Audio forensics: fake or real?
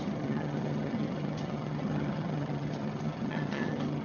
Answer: fake